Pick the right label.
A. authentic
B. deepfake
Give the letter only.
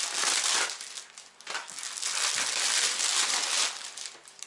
A